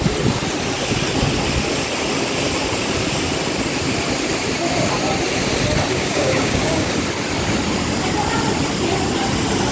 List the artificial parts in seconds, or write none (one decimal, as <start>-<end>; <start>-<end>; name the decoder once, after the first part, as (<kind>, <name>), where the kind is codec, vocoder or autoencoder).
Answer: 5.9-6.9 (codec, DAC)